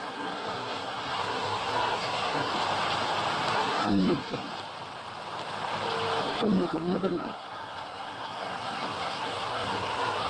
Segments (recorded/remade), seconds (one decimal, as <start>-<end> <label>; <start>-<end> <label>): 0.0-2.5 remade; 2.5-3.5 recorded; 3.5-4.5 remade; 4.5-6.2 recorded; 6.2-10.3 remade